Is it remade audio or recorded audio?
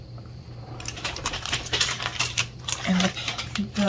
remade